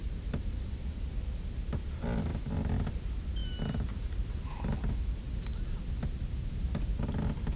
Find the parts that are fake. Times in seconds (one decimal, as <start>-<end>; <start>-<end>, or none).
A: 3.4-4.9